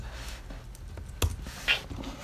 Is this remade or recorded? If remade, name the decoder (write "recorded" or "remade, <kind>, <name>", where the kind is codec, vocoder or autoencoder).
recorded